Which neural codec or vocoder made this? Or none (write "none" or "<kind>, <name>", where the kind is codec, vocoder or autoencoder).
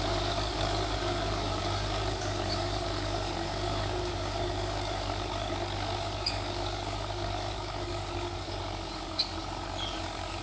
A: codec, DAC